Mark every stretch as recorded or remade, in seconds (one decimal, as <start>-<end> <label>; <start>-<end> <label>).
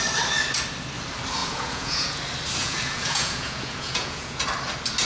0.0-1.4 recorded; 1.4-2.2 remade; 2.2-2.6 recorded; 2.6-4.4 remade; 4.4-5.0 recorded